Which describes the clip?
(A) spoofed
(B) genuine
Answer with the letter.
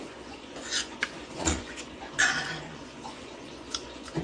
A